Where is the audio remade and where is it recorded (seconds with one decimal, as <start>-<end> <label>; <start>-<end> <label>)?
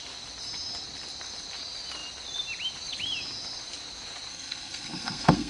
0.0-4.3 recorded; 4.3-5.5 remade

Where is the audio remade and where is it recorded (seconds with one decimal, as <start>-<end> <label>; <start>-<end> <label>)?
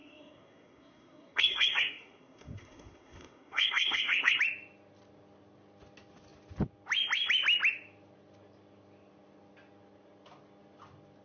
0.0-4.4 remade; 4.4-11.2 recorded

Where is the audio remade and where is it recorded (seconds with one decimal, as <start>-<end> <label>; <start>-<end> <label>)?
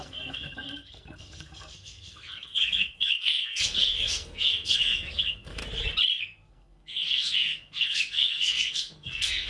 0.0-5.6 remade; 5.6-6.2 recorded; 6.2-9.5 remade